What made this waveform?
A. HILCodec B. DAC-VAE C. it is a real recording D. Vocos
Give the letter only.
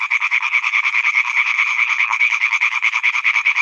A